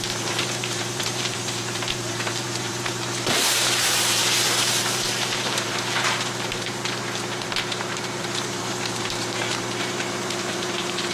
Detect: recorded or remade remade